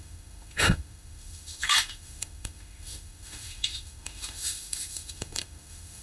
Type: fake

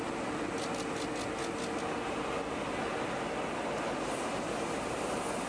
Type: real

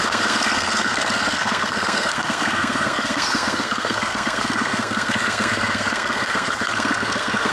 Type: fake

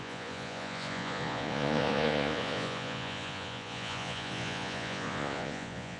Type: fake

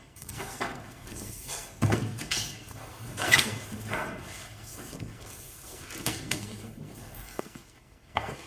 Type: fake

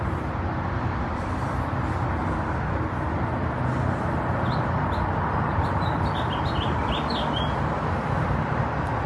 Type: real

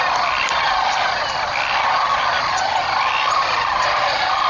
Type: real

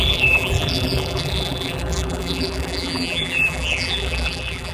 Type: fake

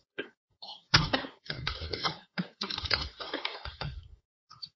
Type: fake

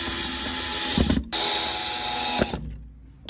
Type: real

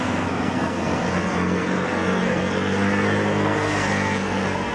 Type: fake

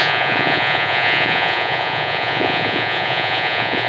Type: fake